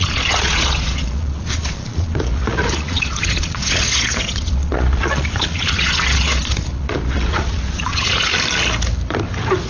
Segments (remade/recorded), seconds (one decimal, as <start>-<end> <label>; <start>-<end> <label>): 0.0-8.3 remade; 8.3-9.7 recorded

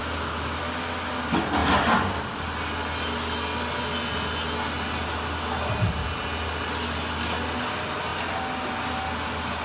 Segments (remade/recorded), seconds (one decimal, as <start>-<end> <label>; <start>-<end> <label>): 0.0-9.6 recorded

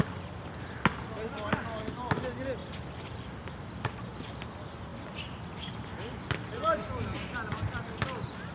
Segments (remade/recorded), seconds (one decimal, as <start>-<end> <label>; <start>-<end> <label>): 0.0-8.5 recorded